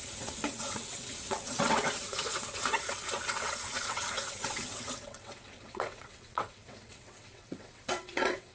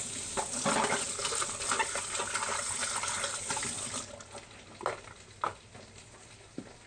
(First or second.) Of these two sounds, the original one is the second